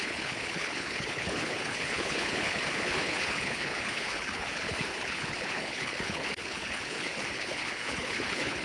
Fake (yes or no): yes